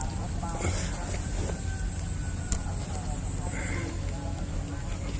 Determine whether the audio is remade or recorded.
recorded